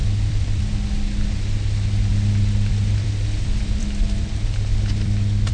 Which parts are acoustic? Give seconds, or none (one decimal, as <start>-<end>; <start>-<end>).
0.7-2.1